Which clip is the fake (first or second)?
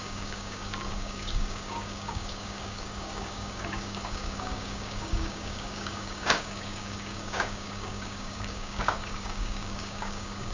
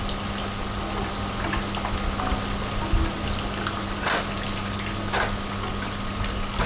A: first